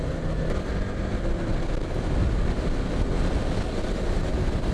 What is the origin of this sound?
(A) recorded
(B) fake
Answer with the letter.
A